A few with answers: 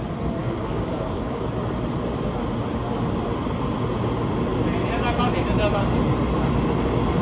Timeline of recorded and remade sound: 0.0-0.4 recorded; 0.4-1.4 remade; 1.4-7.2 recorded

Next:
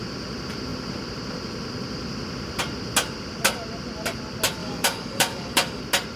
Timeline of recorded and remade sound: 0.0-4.6 recorded; 4.6-5.8 remade; 5.8-6.2 recorded

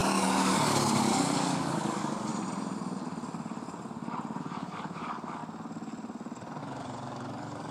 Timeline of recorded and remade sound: 0.0-2.3 remade; 2.3-4.4 recorded; 4.4-5.4 remade; 5.4-6.6 recorded; 6.6-7.7 remade

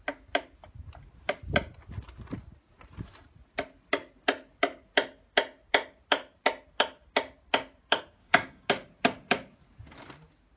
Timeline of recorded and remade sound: 0.0-8.2 recorded; 8.2-8.7 remade; 8.7-10.6 recorded

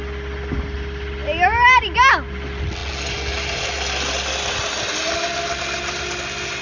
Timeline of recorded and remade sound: 0.0-6.6 recorded